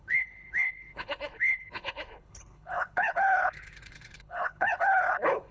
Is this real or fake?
fake